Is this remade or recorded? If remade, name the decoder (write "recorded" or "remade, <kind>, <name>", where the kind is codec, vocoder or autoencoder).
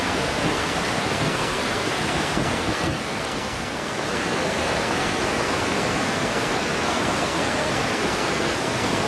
remade, codec, SNAC